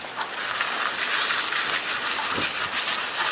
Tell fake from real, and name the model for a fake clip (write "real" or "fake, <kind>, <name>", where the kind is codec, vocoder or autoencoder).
real